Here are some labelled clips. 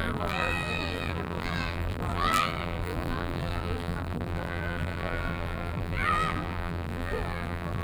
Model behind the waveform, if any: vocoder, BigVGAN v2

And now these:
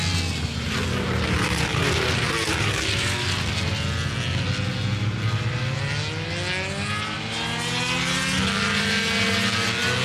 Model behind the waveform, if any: none